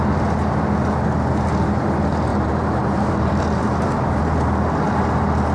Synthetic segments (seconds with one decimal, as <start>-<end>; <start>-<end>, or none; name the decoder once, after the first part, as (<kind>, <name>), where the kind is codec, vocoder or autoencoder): 2.3-4.2 (vocoder, BigVGAN v2)